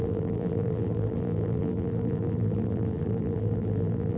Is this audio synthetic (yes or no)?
yes